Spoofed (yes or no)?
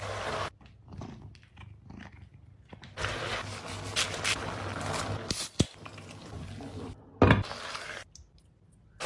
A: no